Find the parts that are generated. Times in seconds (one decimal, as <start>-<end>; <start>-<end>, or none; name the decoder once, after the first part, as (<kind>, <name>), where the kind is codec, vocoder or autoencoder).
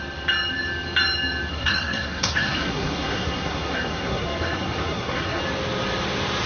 1.5-5.4 (codec, SNAC)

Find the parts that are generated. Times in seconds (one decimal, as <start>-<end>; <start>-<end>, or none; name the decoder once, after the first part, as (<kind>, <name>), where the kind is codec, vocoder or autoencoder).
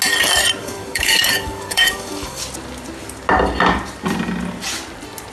0.6-2.4 (codec, DAC)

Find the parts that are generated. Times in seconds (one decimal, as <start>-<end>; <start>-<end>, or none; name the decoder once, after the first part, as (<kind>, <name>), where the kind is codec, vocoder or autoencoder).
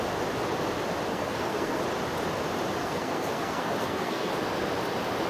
1.1-1.8 (codec, SNAC); 2.8-4.3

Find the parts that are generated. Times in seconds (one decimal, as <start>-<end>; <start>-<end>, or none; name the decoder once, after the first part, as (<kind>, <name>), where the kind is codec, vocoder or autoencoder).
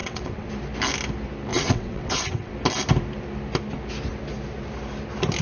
0.0-0.5 (vocoder, WaveNeXt); 1.5-2.5